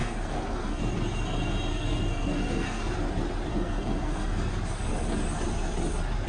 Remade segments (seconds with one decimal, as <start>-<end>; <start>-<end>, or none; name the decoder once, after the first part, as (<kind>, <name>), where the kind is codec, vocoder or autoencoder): 0.0-0.8 (codec, SNAC); 1.7-2.8; 3.5-4.5